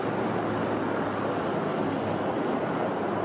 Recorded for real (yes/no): yes